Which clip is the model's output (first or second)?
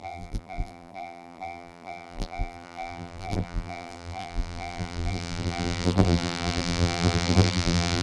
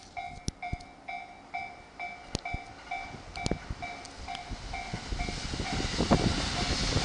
first